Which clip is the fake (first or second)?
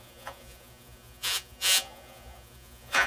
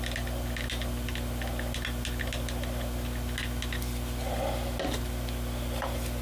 first